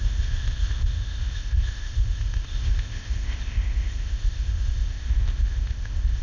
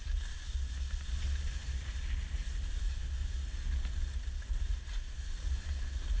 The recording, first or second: second